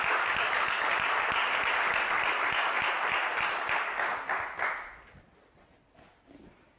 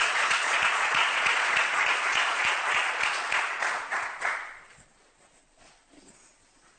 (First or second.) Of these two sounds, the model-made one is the second